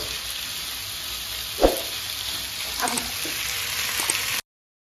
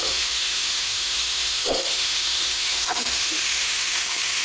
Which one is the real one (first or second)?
first